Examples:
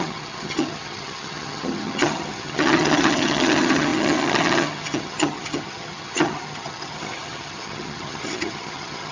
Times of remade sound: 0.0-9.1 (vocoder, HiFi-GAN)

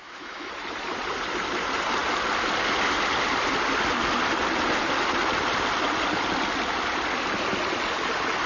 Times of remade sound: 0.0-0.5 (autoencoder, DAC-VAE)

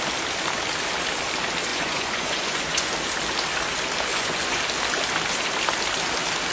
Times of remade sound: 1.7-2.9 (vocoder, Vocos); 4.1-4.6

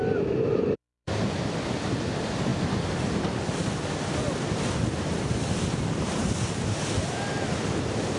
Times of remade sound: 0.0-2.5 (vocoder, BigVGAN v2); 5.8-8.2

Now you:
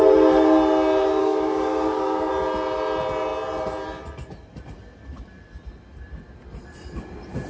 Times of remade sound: 1.2-2.3 (codec, DAC)

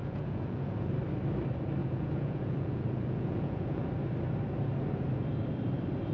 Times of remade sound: 0.0-0.9 (vocoder, Vocos); 1.8-3.9